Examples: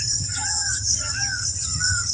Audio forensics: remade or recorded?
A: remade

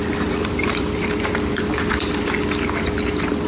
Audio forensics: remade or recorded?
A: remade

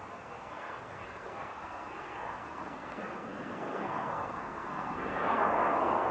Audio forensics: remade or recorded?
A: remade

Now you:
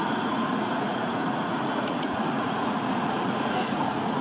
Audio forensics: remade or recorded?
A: remade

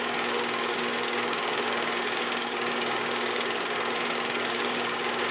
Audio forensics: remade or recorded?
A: remade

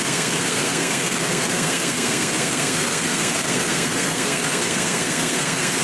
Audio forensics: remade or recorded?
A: remade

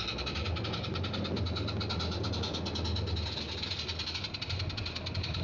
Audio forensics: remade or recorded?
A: recorded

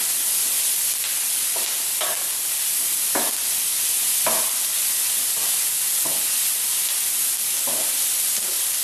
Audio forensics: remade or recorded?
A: recorded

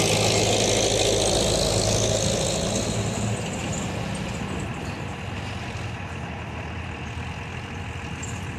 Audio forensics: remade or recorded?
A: recorded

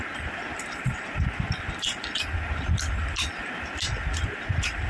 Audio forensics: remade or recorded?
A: recorded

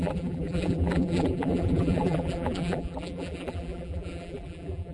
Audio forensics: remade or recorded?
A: remade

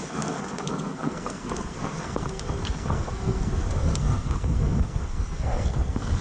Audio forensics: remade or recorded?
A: remade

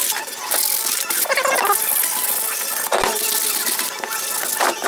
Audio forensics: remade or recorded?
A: recorded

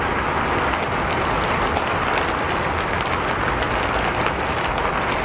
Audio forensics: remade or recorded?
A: recorded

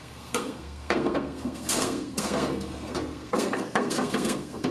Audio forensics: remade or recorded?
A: remade